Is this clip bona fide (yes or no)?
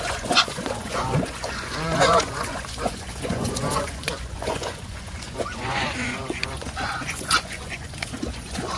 no